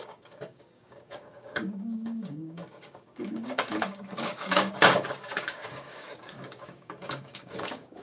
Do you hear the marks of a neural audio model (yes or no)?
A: yes